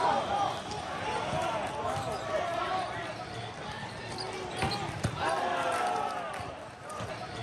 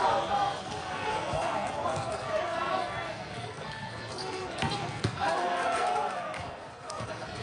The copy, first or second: second